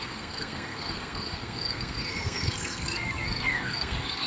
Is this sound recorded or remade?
remade